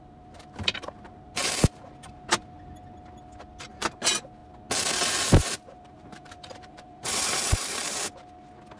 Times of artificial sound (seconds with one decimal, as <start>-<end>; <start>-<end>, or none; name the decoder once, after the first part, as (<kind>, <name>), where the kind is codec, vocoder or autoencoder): 0.0-1.4 (vocoder, BigVGAN v2); 3.7-4.4; 5.2-7.8